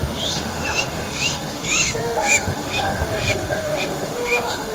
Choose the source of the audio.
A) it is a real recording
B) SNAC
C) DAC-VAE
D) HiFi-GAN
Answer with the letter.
C